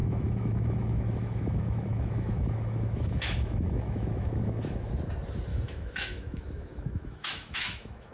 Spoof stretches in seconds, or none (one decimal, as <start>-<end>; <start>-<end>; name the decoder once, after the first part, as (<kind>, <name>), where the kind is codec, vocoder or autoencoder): 0.0-4.9 (autoencoder, DAC-VAE); 5.5-8.1